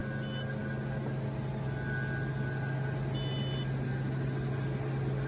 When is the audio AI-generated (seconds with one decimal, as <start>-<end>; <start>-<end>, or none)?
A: none